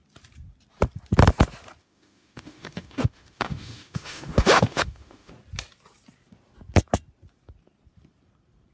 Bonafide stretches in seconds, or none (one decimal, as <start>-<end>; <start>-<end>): 0.0-1.8; 5.3-8.7